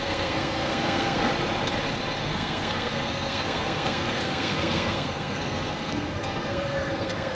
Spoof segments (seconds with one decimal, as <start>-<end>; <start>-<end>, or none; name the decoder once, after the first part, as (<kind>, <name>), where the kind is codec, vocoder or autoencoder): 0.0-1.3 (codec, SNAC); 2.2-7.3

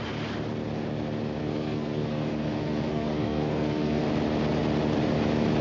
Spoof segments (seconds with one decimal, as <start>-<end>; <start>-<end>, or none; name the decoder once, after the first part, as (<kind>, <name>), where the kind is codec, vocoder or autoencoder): 1.4-4.0 (codec, SNAC)

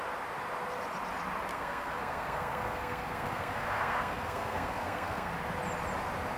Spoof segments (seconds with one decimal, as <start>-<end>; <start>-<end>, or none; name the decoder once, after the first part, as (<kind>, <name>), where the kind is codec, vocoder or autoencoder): 1.5-5.3 (codec, SNAC)